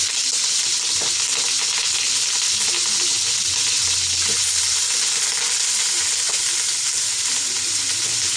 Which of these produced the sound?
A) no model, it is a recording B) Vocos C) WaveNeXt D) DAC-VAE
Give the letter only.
A